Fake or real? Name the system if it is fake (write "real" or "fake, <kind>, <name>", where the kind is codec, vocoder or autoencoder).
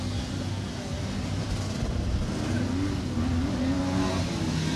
real